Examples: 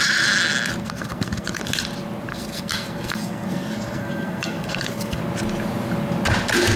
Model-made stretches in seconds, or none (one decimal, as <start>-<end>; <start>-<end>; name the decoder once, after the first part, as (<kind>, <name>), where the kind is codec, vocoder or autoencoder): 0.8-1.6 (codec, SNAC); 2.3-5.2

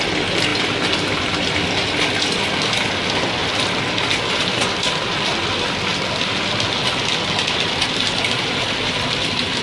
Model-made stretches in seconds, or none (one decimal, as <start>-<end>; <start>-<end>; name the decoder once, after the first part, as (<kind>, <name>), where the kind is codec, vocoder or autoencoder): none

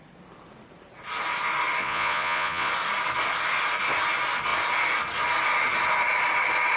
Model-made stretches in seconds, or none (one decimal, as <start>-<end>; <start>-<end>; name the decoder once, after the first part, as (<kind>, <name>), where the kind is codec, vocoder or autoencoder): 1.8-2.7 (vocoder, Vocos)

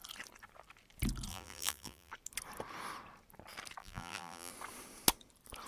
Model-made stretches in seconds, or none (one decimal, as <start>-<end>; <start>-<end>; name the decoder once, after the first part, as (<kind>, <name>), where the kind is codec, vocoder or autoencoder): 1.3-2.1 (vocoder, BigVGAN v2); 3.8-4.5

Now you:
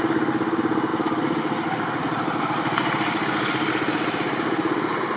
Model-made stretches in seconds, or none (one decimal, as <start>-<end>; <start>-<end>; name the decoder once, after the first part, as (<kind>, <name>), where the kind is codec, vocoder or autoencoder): 0.9-1.4 (vocoder, BigVGAN v2); 2.0-5.2

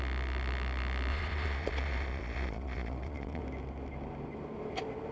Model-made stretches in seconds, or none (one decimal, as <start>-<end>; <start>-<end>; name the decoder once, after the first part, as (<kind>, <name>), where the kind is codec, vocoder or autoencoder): 1.1-3.4 (vocoder, Vocos)

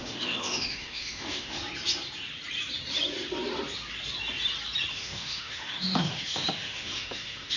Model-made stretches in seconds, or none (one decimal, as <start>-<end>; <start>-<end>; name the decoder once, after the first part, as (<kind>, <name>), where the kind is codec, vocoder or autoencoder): 0.0-1.6 (autoencoder, DAC-VAE); 4.9-7.6

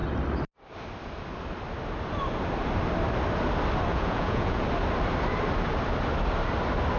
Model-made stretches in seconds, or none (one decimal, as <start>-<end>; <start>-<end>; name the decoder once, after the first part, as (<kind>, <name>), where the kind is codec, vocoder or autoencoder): 3.9-4.6 (vocoder, Vocos)